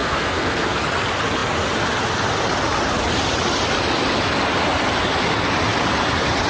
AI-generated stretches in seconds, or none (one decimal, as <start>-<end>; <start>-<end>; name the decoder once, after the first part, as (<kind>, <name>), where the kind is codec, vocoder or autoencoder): 0.0-0.8 (codec, SNAC)

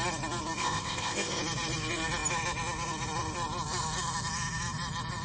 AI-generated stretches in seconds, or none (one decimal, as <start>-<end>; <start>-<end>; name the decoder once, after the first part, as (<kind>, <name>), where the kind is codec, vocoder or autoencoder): 0.6-1.4 (codec, ZipCodec)